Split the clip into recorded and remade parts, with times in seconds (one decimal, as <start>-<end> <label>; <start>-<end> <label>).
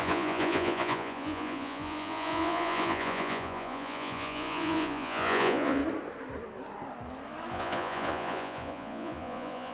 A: 0.0-5.8 remade; 5.8-7.5 recorded; 7.5-9.7 remade